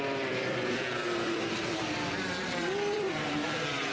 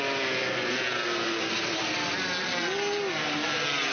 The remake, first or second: first